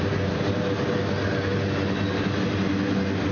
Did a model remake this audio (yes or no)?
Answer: no